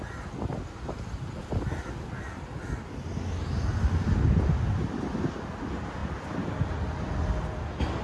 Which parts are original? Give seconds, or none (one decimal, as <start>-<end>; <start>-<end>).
0.0-8.0